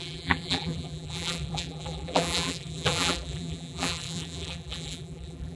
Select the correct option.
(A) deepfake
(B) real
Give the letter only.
A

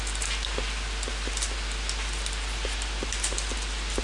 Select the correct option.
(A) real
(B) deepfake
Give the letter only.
A